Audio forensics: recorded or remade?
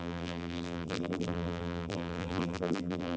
remade